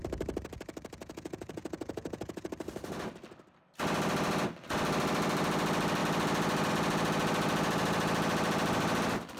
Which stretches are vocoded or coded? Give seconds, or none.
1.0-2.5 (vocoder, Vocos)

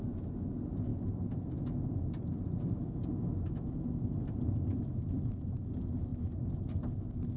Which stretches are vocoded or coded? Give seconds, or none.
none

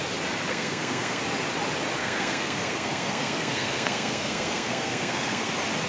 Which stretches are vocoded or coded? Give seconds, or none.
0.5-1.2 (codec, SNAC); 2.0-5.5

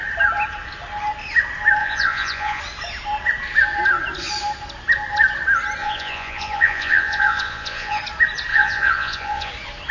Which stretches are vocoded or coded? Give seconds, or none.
1.8-2.6 (vocoder, Vocos); 5.8-8.0; 8.5-9.5

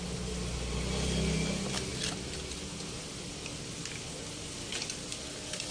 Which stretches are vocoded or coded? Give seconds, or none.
none

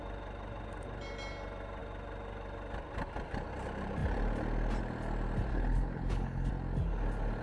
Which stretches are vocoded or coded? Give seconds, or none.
5.5-6.5 (codec, HILCodec)